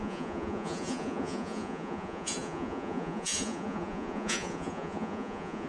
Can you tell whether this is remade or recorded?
remade